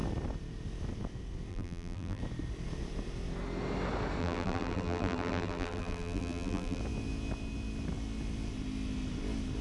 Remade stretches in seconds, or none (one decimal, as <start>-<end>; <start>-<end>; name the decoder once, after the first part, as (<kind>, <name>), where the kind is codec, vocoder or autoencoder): 1.5-2.2 (vocoder, BigVGAN v2); 4.2-6.8